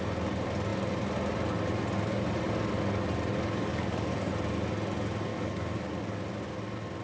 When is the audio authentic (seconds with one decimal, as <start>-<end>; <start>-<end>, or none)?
0.0-3.7; 4.3-5.3; 6.2-7.0